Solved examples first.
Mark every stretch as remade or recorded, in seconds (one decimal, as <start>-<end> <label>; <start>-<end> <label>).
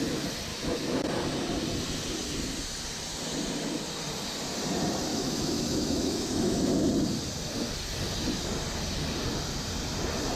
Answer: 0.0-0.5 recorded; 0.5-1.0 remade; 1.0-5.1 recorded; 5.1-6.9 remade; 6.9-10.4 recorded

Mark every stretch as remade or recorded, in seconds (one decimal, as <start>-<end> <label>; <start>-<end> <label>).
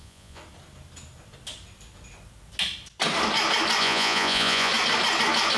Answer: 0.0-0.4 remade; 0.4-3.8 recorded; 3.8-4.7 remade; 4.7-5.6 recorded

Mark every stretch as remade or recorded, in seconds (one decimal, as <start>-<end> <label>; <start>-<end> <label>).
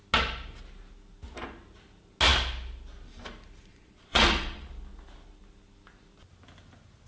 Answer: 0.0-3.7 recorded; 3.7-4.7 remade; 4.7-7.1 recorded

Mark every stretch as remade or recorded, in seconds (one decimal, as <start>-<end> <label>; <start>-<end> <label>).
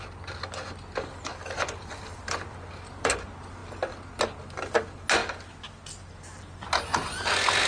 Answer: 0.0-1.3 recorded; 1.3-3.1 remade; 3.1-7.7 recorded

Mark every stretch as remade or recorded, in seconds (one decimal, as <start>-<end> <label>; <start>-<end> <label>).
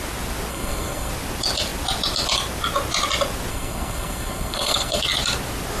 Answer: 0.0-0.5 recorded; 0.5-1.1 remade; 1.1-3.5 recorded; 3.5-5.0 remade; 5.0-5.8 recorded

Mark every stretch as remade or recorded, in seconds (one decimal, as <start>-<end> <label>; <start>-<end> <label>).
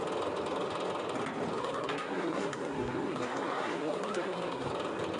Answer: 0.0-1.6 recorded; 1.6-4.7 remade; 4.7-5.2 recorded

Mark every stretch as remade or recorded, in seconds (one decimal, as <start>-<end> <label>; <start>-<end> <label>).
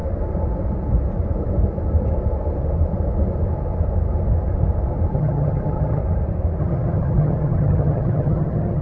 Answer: 0.0-5.1 recorded; 5.1-6.0 remade; 6.0-6.6 recorded; 6.6-8.8 remade